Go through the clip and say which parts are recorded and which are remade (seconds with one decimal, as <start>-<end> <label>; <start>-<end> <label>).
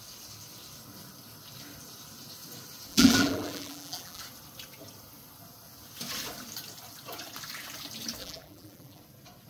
0.0-2.9 recorded; 2.9-4.2 remade; 4.2-8.2 recorded; 8.2-9.0 remade; 9.0-9.5 recorded